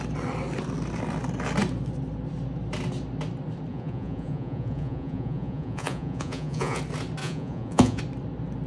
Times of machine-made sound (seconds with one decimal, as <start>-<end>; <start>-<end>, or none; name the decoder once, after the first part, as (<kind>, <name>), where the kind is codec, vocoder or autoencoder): 3.7-6.8 (vocoder, Vocos); 7.2-8.0